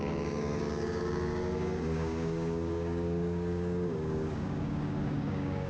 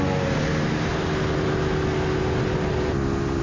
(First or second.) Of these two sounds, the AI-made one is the first